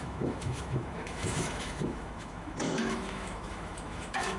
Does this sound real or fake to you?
fake